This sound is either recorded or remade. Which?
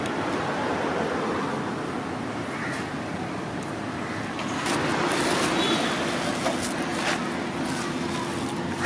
recorded